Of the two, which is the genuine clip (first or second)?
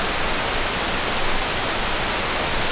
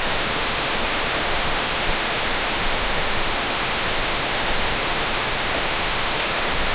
first